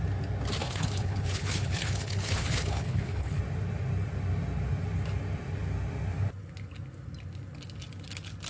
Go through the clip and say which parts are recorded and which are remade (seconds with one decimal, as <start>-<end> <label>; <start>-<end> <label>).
0.0-0.6 recorded; 0.6-3.4 remade; 3.4-8.5 recorded